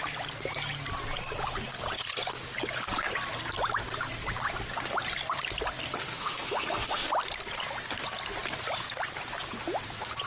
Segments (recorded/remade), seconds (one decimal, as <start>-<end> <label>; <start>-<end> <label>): 0.0-6.0 recorded; 6.0-7.1 remade; 7.1-10.3 recorded